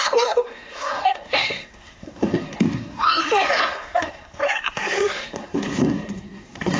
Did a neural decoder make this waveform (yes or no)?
yes